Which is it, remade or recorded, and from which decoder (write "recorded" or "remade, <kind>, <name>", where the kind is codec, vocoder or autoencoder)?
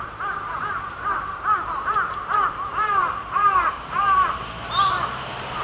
remade, vocoder, BigVGAN v2